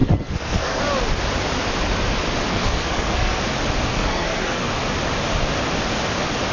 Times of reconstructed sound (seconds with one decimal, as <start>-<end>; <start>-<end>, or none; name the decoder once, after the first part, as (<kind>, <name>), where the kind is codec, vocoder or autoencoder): 0.0-0.8 (codec, SNAC); 2.5-3.4; 3.9-4.7